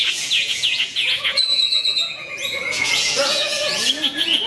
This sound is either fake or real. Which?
fake